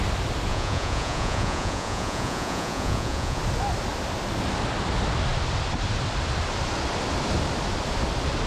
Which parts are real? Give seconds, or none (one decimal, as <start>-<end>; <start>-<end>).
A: 0.0-0.5; 3.4-8.5